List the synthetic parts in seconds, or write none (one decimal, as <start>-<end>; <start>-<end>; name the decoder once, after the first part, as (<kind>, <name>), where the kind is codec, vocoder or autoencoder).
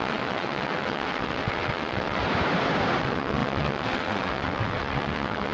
0.0-2.2 (vocoder, WaveNeXt); 3.0-5.5